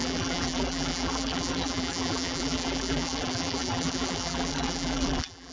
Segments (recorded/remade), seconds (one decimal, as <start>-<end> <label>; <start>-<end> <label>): 0.0-5.5 remade